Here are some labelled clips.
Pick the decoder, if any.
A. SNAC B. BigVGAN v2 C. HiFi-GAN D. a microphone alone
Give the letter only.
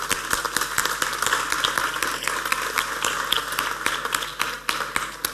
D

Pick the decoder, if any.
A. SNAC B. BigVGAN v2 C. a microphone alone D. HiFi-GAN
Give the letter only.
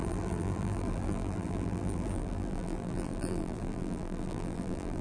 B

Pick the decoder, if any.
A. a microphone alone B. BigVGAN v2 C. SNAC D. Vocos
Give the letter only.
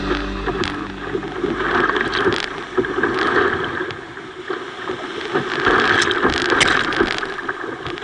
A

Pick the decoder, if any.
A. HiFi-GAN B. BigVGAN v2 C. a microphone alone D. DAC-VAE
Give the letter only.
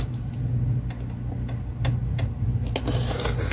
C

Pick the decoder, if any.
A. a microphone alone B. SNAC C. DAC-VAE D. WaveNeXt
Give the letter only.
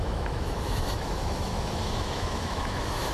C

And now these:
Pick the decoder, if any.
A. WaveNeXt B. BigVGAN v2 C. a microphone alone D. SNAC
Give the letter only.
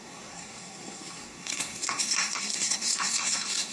D